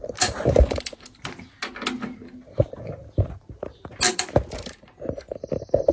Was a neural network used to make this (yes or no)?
no